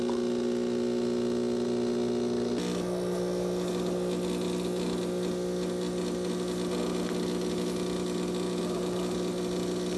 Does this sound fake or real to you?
real